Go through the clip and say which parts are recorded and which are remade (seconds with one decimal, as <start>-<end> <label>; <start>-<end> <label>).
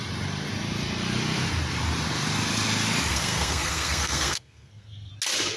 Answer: 0.0-3.1 recorded; 3.1-5.1 remade; 5.1-5.6 recorded